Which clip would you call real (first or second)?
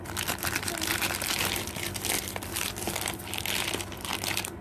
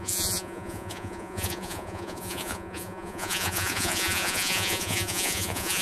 first